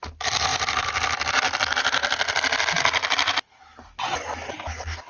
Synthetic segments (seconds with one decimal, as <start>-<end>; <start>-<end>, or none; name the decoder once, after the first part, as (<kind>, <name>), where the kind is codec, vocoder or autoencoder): none